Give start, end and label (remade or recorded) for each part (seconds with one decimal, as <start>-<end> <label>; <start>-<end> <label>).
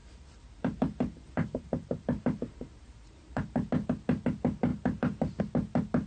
0.0-3.7 remade; 3.7-4.7 recorded; 4.7-5.4 remade; 5.4-6.1 recorded